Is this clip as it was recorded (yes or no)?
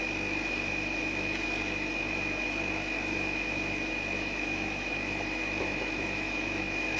no